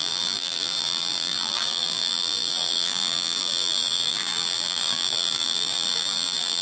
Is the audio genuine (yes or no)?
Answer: no